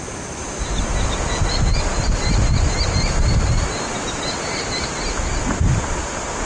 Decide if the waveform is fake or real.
real